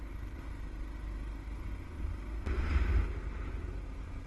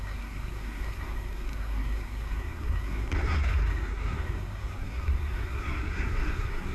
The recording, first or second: first